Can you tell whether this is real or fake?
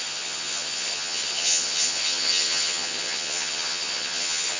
fake